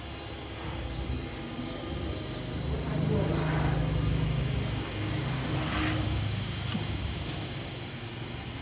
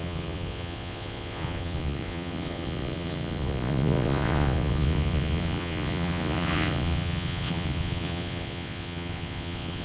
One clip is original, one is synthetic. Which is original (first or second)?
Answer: first